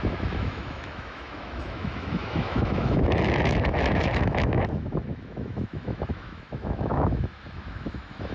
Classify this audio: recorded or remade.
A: remade